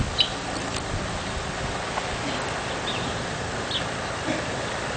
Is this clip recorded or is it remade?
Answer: recorded